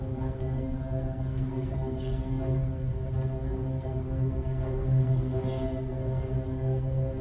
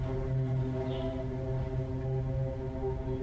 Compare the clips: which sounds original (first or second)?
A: second